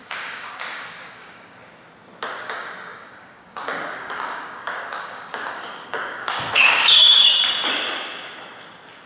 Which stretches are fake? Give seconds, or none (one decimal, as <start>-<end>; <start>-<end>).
0.0-1.6; 2.4-7.3

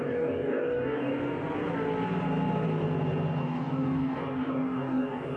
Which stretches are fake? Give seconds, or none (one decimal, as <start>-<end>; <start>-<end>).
0.0-1.1; 3.4-5.4

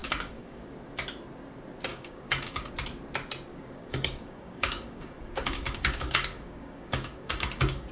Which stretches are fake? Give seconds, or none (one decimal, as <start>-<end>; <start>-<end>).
0.0-0.7; 1.9-2.7; 3.5-7.9